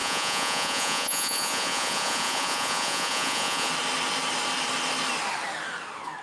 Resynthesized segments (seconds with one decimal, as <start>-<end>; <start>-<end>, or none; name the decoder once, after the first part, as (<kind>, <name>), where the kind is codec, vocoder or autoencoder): 0.0-3.7 (vocoder, Vocos)